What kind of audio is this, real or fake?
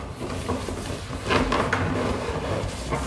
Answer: real